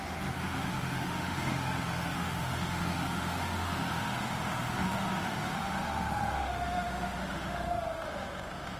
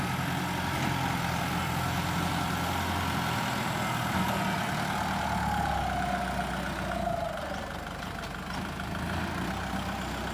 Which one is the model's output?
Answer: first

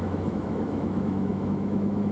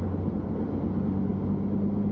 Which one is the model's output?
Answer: first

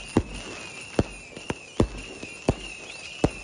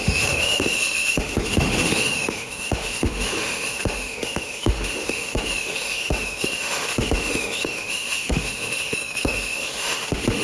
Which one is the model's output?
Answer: second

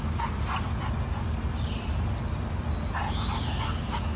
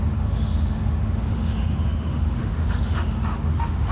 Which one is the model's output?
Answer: second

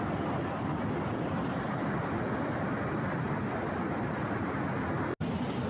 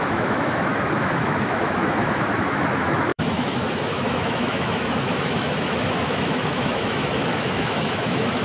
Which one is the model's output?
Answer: second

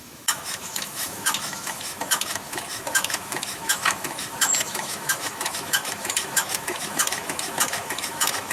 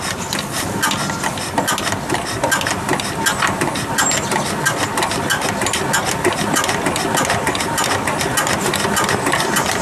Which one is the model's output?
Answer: first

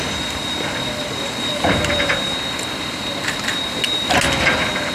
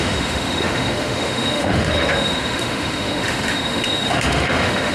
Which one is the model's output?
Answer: second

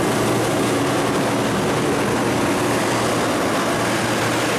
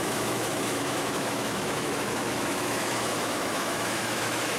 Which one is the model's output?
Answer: second